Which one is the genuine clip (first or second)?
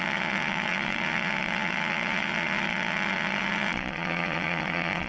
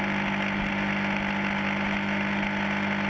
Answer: second